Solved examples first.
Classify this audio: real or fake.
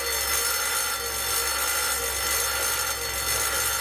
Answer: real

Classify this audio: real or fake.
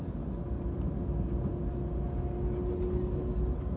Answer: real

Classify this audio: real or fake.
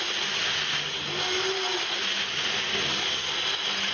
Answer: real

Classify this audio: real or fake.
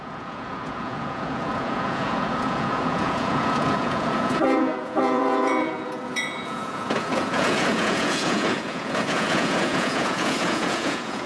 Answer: fake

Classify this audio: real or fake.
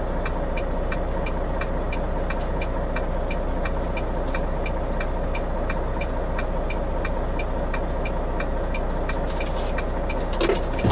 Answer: real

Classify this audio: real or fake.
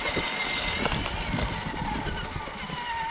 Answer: real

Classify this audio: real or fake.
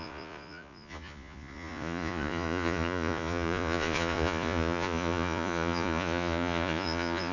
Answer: fake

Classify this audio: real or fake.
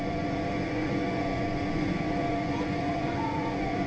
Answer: fake